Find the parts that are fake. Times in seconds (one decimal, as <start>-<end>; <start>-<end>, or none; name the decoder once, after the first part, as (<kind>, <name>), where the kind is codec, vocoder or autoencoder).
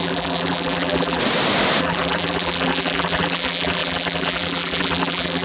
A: 0.0-1.2 (vocoder, BigVGAN v2); 1.8-5.4